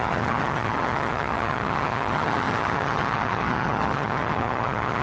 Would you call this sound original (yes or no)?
no